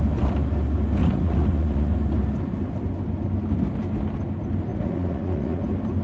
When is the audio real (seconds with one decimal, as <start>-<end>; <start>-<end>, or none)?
0.0-1.0; 1.9-4.7; 5.6-6.0